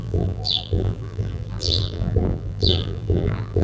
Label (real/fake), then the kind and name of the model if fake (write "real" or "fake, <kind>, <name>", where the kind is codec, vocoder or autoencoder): fake, vocoder, BigVGAN v2